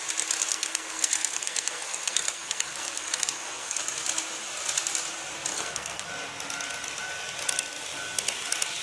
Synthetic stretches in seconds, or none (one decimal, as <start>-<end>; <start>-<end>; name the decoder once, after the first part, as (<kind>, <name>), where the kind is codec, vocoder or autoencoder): 0.5-3.8 (codec, SNAC); 5.5-6.1